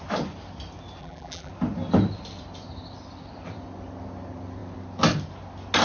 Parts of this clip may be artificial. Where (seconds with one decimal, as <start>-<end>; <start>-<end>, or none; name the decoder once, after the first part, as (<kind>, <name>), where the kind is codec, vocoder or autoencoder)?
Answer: 1.0-1.5 (vocoder, BigVGAN v2)